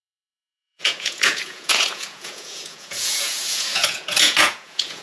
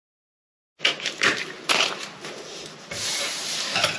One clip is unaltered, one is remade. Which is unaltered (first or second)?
second